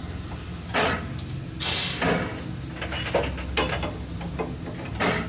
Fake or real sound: real